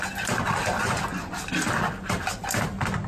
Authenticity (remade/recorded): recorded